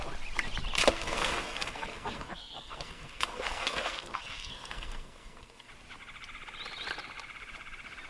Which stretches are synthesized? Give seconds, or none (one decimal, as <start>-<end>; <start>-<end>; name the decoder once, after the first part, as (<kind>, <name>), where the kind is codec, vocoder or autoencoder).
0.9-5.7 (codec, SNAC)